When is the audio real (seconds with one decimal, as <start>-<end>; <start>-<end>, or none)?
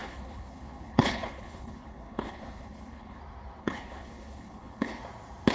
3.2-3.6; 5.0-5.5